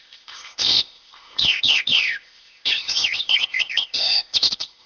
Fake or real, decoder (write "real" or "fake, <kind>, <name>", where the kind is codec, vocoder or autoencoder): fake, codec, ZipCodec